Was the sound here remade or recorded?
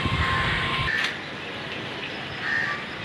recorded